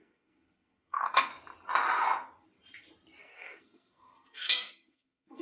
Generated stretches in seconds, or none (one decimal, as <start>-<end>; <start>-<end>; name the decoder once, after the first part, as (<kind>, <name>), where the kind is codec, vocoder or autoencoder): 0.0-1.3 (codec, SNAC); 3.2-5.4